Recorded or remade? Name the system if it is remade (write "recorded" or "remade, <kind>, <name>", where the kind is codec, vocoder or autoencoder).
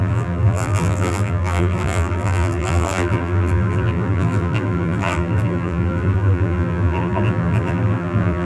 remade, vocoder, BigVGAN v2